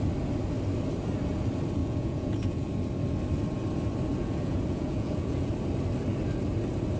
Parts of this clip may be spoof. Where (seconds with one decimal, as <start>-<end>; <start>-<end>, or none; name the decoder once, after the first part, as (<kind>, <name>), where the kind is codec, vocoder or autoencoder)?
1.8-2.7 (vocoder, Vocos); 4.1-5.5